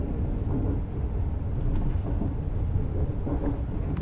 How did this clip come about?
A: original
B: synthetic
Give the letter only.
A